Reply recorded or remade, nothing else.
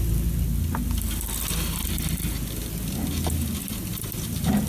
recorded